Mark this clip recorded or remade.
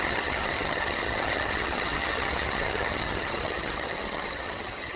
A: remade